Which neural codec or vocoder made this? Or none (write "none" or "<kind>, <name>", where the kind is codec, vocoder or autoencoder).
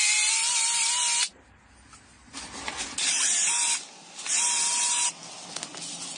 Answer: none